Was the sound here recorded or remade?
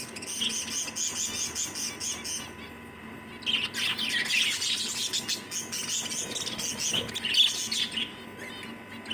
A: recorded